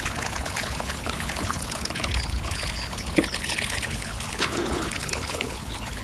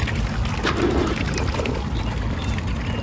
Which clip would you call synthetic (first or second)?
first